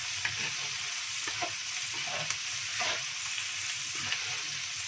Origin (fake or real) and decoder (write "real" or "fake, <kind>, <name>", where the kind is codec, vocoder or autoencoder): real